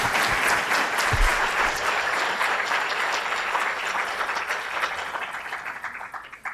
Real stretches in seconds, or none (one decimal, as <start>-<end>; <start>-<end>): 0.0-1.3; 2.9-6.5